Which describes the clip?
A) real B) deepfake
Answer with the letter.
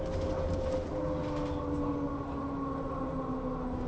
A